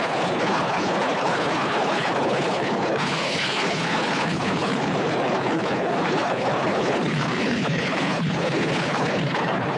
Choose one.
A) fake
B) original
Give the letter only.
A